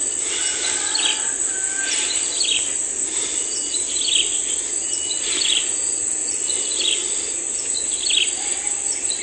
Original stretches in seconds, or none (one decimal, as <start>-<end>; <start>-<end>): 0.0-9.2